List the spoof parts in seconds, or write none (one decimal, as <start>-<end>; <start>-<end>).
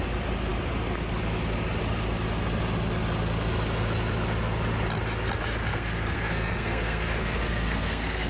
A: 5.7-8.3